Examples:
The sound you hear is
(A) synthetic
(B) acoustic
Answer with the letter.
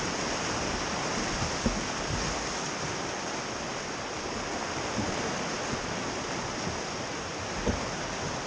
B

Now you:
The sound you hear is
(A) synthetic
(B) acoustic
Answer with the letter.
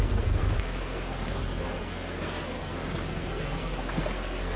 A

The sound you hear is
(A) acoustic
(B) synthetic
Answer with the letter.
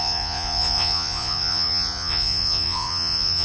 B